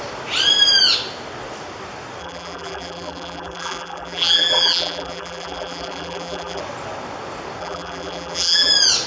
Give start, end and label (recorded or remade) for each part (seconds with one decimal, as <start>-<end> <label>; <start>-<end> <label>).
0.0-2.2 recorded; 2.2-6.6 remade; 6.6-7.6 recorded; 7.6-8.7 remade; 8.7-9.1 recorded